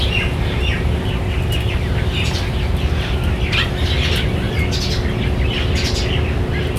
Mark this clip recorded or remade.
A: recorded